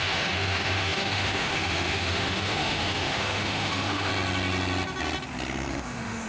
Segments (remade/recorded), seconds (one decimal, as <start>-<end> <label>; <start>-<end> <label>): 0.0-4.1 remade; 4.1-5.7 recorded; 5.7-6.3 remade